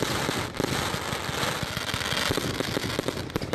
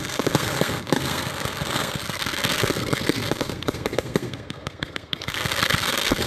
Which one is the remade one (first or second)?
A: second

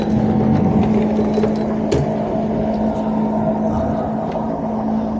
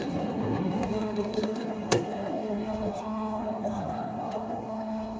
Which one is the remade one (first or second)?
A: second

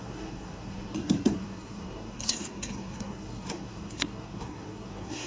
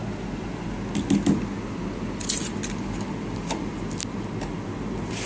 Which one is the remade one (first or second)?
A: first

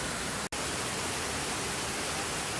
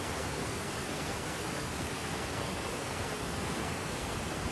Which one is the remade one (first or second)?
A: second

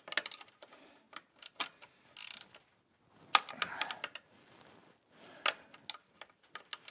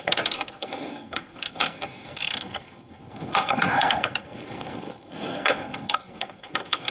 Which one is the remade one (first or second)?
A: second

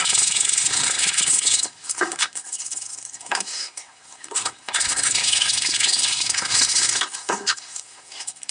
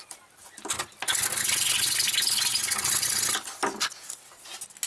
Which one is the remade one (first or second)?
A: first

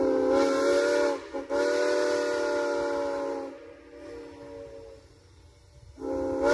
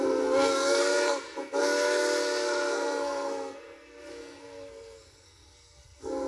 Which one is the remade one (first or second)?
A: second